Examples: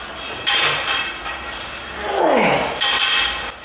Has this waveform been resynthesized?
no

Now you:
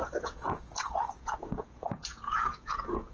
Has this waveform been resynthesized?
yes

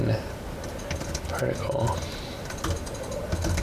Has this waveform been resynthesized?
no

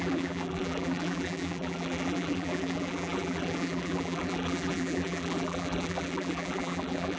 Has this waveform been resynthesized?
yes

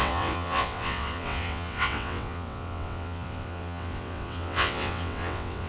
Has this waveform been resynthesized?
yes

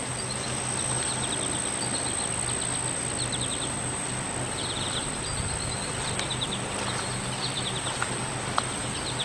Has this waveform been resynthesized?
no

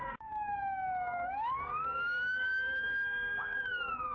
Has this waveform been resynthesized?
yes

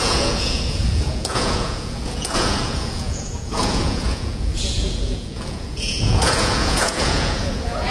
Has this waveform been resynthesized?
yes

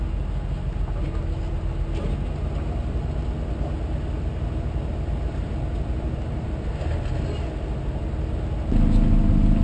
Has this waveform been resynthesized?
no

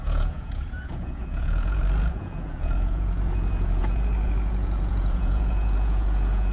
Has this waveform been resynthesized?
yes